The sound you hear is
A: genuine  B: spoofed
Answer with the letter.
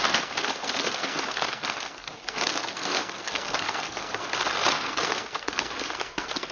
B